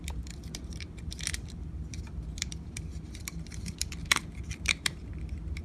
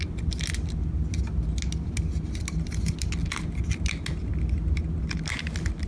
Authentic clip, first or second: second